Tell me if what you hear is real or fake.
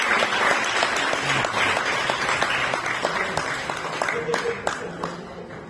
real